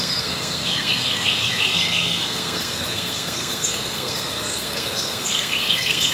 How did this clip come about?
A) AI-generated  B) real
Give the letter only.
A